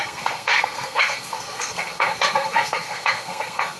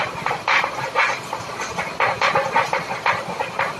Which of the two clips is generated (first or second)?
first